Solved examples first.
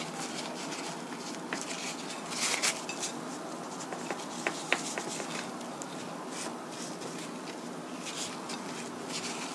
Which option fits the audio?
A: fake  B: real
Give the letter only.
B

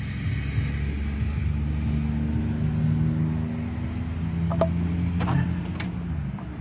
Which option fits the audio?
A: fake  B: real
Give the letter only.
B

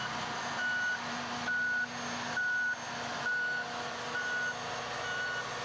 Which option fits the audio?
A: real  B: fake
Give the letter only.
A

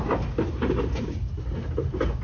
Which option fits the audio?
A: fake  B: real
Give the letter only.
B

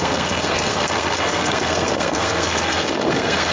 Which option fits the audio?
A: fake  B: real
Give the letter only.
A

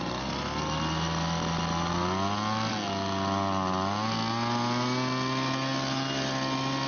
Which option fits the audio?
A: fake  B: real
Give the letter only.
B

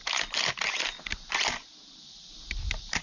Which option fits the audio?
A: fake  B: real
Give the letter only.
B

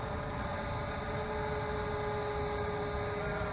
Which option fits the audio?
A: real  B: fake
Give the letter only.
A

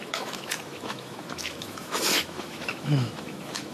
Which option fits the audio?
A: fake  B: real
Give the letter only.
A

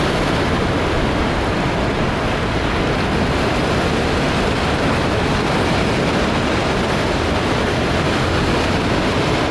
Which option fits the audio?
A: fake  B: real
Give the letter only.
B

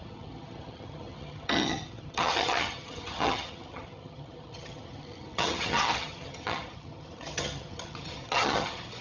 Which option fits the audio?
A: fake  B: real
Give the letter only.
A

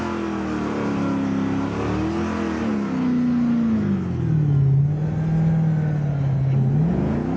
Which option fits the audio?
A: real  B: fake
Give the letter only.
A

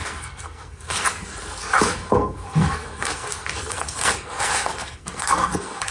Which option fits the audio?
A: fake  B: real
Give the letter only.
A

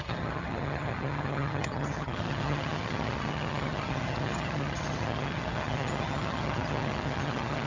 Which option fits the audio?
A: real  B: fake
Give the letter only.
B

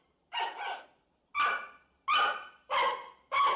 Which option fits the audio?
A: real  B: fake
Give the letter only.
A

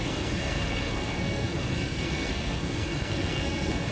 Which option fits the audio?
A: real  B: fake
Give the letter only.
B